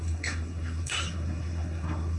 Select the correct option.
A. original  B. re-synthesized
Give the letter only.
B